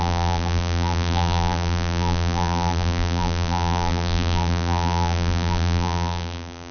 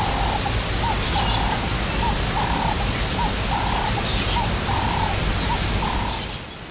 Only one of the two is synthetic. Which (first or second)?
first